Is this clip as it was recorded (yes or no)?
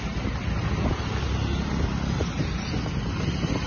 yes